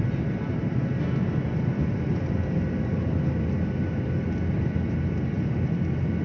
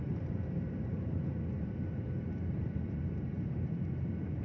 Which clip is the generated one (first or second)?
second